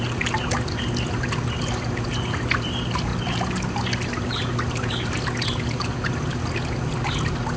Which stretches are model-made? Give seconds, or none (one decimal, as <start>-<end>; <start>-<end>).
none